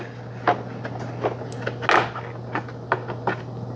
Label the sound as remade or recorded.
recorded